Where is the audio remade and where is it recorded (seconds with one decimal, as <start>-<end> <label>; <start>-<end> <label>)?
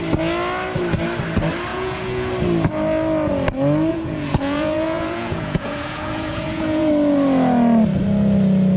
0.0-1.7 recorded; 1.7-2.3 remade; 2.3-3.9 recorded; 3.9-6.9 remade; 6.9-8.8 recorded